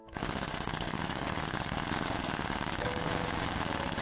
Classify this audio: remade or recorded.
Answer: remade